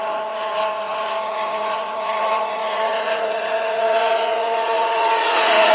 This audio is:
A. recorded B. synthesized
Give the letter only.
B